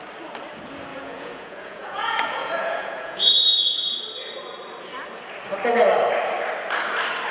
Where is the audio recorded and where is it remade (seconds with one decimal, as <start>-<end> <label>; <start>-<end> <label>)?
0.0-0.9 recorded; 0.9-3.3 remade; 3.3-7.3 recorded